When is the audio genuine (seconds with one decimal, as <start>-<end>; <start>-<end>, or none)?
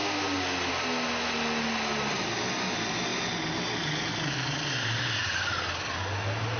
0.0-6.6